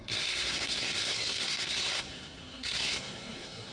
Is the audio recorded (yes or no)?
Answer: no